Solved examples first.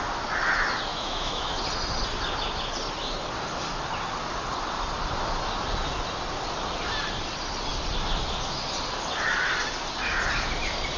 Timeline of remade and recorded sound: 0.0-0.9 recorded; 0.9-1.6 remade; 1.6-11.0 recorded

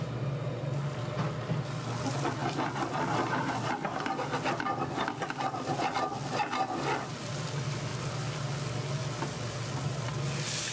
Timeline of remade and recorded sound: 0.0-10.7 recorded